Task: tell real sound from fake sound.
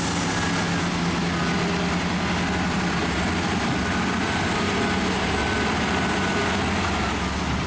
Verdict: real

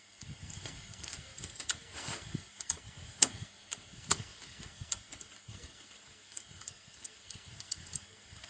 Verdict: fake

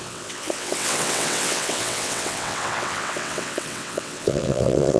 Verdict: fake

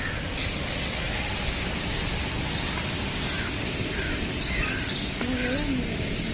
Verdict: real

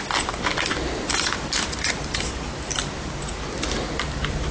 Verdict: real